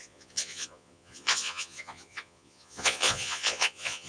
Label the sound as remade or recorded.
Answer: remade